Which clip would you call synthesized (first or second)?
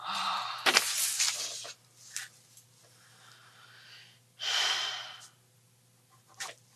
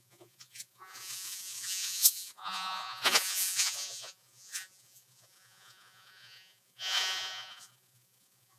second